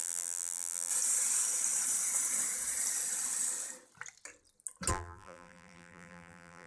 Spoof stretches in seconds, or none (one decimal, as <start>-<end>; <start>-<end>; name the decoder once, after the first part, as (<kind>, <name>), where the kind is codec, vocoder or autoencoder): 0.0-0.9 (vocoder, BigVGAN v2); 4.9-6.7